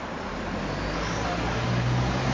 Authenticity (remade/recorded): recorded